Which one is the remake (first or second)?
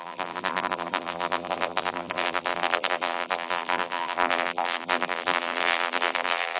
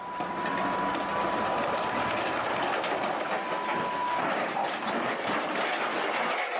first